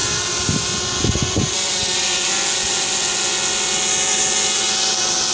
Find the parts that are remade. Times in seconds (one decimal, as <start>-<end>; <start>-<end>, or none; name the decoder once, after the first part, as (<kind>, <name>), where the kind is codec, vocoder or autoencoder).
none